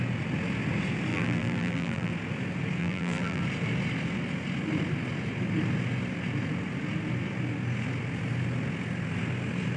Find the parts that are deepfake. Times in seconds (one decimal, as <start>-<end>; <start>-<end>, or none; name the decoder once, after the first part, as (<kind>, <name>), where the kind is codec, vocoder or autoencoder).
1.1-2.1 (vocoder, BigVGAN v2); 2.8-3.4